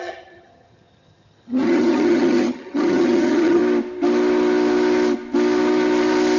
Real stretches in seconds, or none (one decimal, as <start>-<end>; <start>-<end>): 3.6-6.4